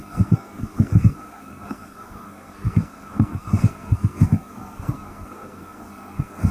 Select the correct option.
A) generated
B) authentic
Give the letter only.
A